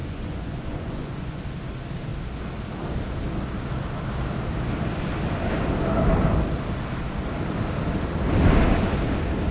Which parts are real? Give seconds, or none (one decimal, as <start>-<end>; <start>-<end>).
1.4-9.5